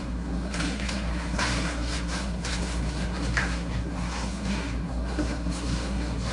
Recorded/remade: remade